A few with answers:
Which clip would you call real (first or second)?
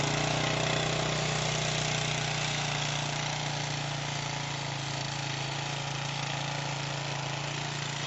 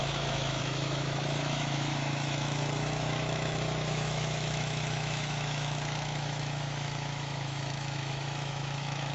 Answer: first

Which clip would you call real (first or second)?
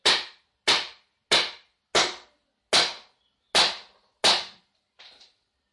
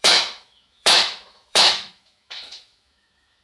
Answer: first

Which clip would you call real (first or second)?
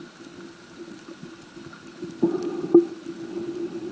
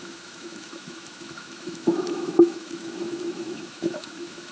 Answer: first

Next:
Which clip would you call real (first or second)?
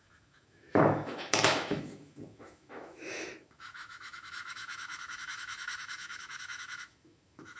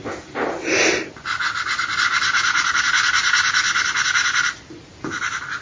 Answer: second